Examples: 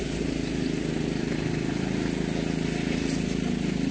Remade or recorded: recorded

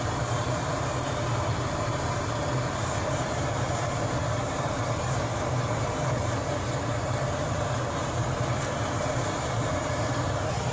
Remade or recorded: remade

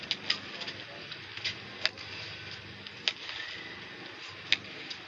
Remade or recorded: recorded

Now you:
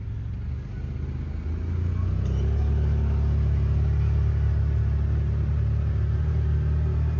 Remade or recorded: recorded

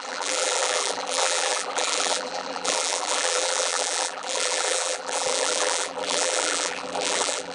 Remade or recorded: remade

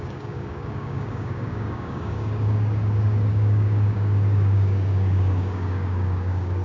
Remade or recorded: remade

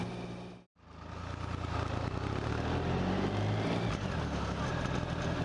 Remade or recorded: recorded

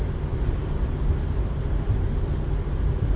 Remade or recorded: recorded